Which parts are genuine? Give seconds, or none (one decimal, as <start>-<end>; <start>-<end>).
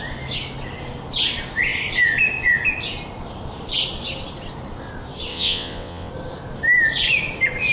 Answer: 0.0-5.3; 6.1-7.7